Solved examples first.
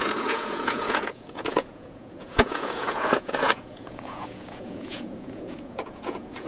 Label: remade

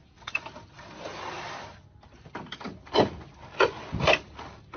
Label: recorded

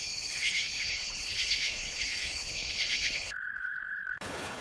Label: remade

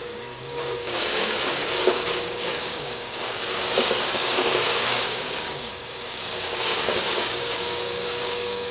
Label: remade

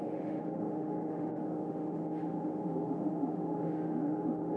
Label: remade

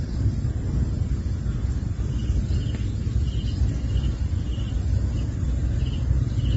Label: recorded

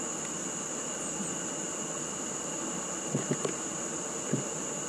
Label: recorded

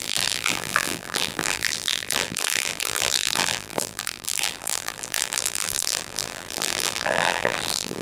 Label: remade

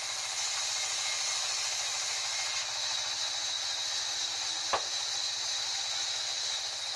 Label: recorded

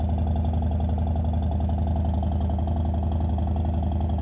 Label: recorded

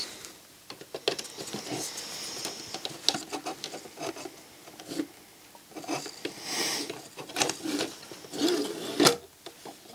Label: recorded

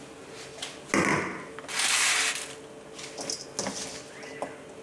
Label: recorded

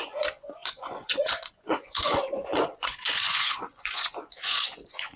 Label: remade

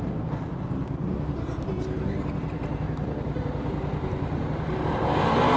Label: remade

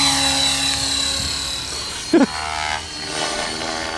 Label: recorded